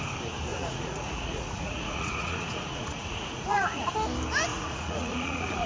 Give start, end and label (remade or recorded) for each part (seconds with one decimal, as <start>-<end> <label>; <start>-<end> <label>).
0.0-0.5 recorded; 0.5-3.9 remade; 3.9-4.5 recorded; 4.5-5.7 remade